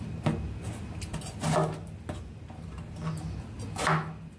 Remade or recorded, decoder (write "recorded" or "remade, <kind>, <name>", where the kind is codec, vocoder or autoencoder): recorded